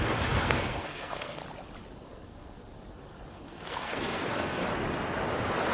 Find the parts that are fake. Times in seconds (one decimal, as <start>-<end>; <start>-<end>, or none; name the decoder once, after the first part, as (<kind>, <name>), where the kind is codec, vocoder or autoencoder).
0.0-1.4 (codec, SNAC); 2.0-2.6; 3.3-4.6